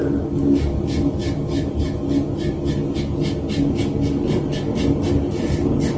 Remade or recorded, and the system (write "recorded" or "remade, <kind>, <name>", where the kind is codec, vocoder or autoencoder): recorded